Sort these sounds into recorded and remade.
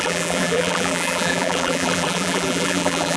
remade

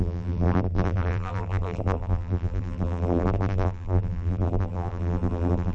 remade